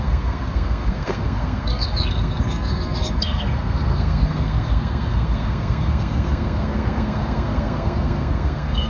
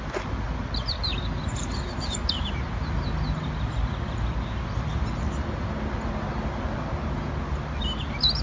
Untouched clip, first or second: second